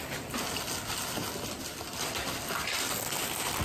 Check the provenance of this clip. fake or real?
real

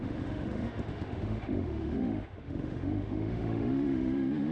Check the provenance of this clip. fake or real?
fake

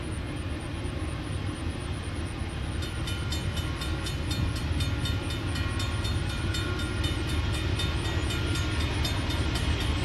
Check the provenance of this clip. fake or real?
real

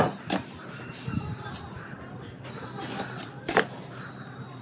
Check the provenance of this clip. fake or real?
real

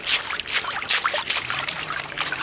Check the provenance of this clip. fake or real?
real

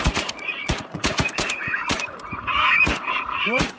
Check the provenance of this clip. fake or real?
fake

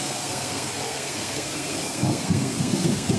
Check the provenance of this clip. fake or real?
fake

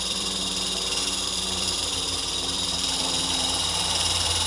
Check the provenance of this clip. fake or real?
fake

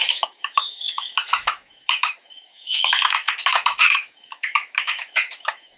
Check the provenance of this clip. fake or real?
fake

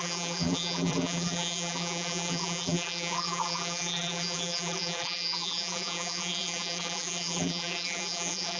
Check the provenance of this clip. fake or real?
fake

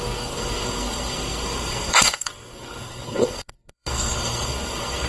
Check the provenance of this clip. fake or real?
fake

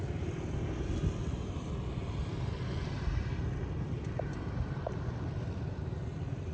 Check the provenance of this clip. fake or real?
real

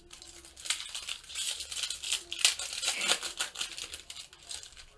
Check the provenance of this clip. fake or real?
real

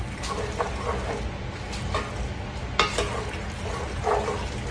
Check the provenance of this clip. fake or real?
real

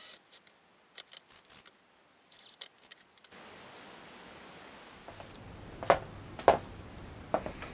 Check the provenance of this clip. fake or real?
real